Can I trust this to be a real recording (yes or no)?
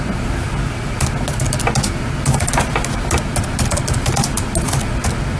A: yes